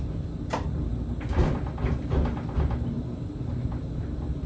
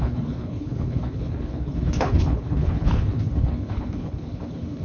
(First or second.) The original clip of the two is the first